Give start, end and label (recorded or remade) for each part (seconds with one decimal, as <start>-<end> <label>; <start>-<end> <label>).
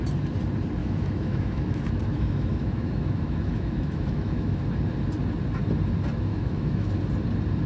0.0-0.8 recorded; 0.8-4.6 remade; 4.6-6.3 recorded; 6.3-7.0 remade; 7.0-7.7 recorded